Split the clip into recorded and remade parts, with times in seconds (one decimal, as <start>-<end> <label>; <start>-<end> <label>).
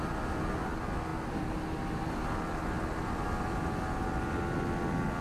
0.0-5.2 recorded